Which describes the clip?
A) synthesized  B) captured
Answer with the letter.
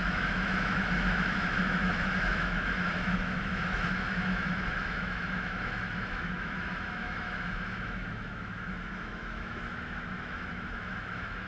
A